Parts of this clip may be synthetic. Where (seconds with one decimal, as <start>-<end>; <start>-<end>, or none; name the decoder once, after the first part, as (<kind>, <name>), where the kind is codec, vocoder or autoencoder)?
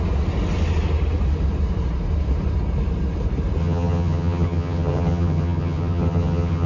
3.6-6.7 (vocoder, HiFi-GAN)